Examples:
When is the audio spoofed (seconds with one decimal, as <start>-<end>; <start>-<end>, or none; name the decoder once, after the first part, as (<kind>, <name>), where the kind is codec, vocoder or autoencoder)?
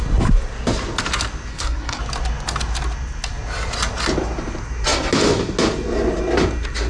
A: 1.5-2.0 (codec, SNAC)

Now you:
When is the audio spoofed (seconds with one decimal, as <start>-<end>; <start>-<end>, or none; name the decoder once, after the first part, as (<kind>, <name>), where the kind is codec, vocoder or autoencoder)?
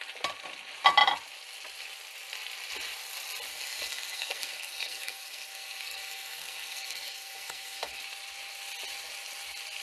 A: 3.5-8.0 (codec, SNAC)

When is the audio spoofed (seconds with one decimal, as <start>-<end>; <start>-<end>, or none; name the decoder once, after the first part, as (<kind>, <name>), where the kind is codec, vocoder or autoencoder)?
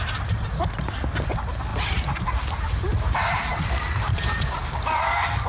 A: none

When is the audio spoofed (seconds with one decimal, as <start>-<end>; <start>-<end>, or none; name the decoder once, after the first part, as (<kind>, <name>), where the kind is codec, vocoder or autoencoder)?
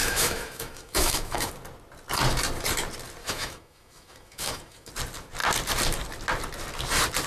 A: 0.0-1.5 (autoencoder, DAC-VAE); 3.2-4.9